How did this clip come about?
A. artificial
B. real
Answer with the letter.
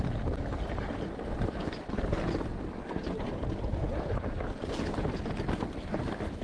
B